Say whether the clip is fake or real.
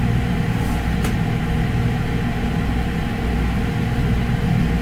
real